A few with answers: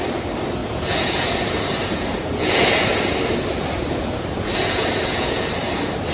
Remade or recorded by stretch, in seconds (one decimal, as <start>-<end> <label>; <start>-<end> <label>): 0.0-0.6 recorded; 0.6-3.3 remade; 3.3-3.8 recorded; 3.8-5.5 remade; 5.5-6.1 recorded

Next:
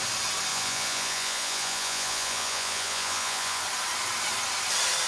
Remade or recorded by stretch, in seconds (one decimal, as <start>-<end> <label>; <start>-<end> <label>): 0.0-0.5 recorded; 0.5-3.6 remade; 3.6-5.1 recorded

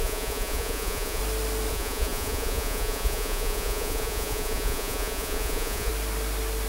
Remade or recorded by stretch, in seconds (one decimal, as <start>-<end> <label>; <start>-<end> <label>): 0.0-1.2 remade; 1.2-1.7 recorded; 1.7-5.9 remade; 5.9-6.7 recorded

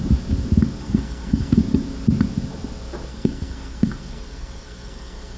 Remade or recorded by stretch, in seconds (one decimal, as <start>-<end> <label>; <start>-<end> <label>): 0.0-0.8 recorded; 0.8-1.6 remade; 1.6-3.1 recorded; 3.1-5.4 remade